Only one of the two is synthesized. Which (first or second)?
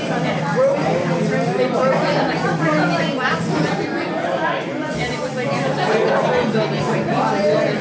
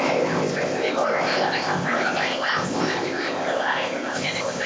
second